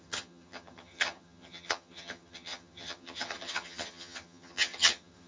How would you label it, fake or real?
fake